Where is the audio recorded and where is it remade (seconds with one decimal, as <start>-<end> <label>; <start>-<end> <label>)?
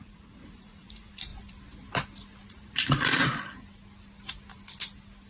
0.0-1.3 remade; 1.3-2.5 recorded; 2.5-3.1 remade; 3.1-5.3 recorded